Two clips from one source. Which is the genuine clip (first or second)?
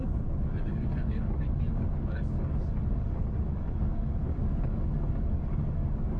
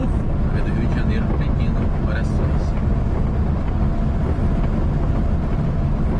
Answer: second